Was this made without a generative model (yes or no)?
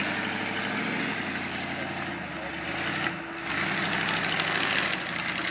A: yes